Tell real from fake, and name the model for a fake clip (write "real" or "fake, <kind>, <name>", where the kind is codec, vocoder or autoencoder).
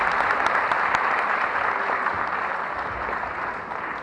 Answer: real